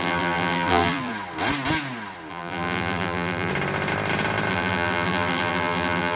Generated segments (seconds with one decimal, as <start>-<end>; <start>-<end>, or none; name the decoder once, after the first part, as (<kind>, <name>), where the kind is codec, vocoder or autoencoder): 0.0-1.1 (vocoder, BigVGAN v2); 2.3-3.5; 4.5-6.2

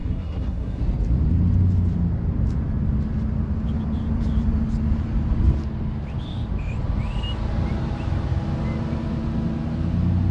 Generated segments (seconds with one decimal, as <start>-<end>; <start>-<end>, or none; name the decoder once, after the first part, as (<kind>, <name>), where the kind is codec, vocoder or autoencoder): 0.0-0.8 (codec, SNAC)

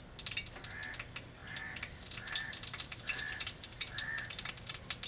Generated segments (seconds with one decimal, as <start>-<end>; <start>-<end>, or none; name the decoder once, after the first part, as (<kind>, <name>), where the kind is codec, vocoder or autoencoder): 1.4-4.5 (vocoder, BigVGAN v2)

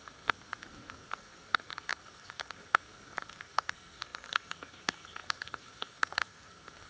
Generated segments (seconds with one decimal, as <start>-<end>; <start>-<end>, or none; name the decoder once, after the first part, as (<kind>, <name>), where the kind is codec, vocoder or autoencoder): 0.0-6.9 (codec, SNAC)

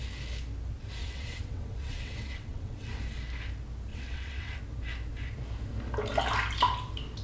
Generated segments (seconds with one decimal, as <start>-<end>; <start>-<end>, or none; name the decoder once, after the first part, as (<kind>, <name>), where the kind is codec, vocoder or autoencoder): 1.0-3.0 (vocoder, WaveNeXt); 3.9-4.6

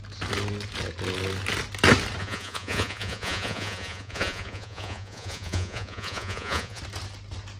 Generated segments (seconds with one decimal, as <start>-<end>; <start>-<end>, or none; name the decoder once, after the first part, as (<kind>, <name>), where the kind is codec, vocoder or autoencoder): 2.2-6.8 (vocoder, Vocos)